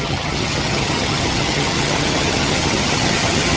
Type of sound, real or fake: fake